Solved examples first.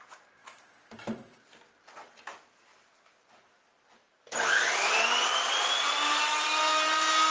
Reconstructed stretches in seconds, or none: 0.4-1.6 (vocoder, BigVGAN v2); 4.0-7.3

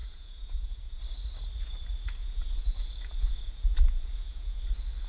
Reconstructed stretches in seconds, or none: 0.0-1.0 (vocoder, Vocos); 2.2-4.6

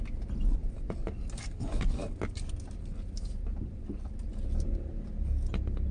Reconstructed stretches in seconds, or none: none

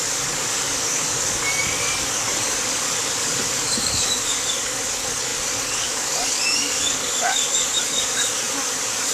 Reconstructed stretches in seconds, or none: 0.0-9.1 (codec, DAC)